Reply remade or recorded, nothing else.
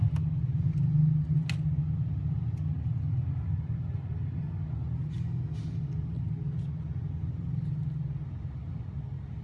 recorded